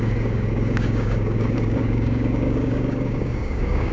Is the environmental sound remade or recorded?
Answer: remade